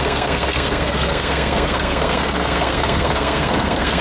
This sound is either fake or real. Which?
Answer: fake